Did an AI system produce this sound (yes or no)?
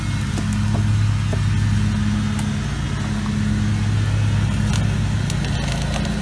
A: no